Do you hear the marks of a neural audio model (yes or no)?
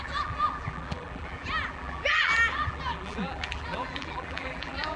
yes